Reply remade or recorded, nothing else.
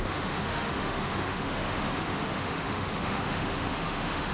remade